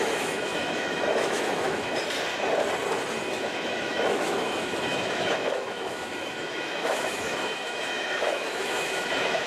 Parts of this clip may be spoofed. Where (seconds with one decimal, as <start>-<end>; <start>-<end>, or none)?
0.0-1.9; 3.3-9.5